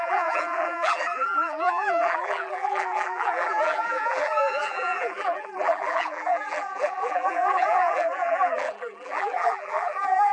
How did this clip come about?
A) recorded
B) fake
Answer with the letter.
B